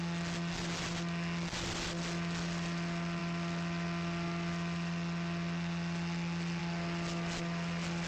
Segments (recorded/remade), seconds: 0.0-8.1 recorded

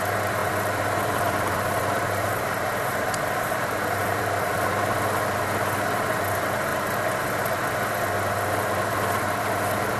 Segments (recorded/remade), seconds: 0.0-0.4 recorded; 0.4-5.4 remade; 5.4-10.0 recorded

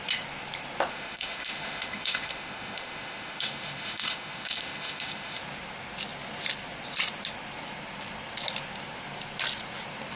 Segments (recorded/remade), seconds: 0.0-0.9 recorded; 0.9-5.4 remade; 5.4-10.2 recorded

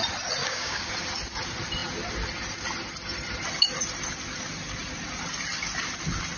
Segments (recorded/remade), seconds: 0.0-0.4 recorded; 0.4-0.9 remade; 0.9-6.4 recorded

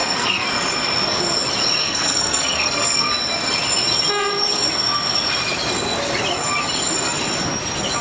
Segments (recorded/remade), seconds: 0.0-0.5 remade; 0.5-1.8 recorded; 1.8-3.1 remade; 3.1-8.0 recorded

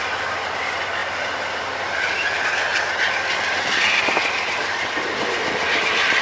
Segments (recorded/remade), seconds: 0.0-1.0 remade; 1.0-1.5 recorded; 1.5-2.7 remade; 2.7-5.8 recorded; 5.8-6.2 remade

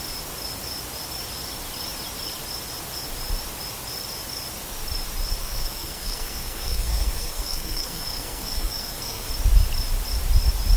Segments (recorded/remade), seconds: 0.0-5.4 recorded; 5.4-9.3 remade; 9.3-10.8 recorded